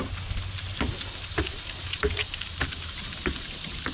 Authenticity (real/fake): real